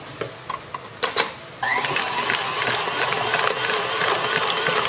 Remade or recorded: recorded